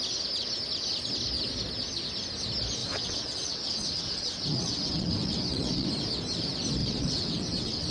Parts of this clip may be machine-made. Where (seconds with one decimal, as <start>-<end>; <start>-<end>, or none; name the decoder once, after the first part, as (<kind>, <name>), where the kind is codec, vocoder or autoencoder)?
2.8-5.9 (vocoder, WaveNeXt); 6.8-7.9